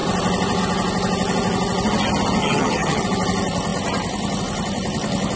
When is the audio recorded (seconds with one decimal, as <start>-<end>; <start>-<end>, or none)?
0.0-2.4; 3.0-5.4